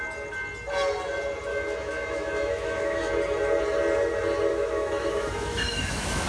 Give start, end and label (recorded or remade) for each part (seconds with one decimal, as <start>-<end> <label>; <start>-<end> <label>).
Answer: 0.0-1.5 recorded; 1.5-3.1 remade; 3.1-4.5 recorded; 4.5-6.3 remade